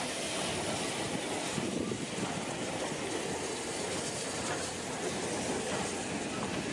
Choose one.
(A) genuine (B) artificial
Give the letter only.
A